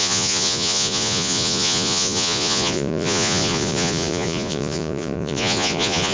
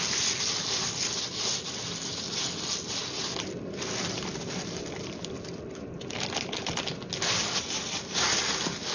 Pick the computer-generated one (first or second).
first